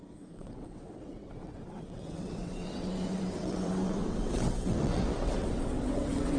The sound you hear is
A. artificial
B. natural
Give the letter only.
A